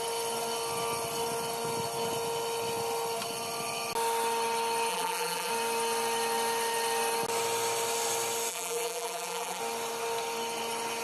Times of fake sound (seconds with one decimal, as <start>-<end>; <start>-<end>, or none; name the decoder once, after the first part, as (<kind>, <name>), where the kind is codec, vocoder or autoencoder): 4.9-5.5 (vocoder, BigVGAN v2); 8.5-9.6